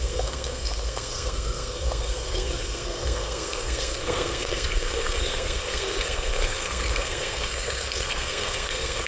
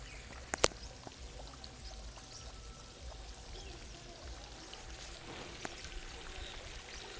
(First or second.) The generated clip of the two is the first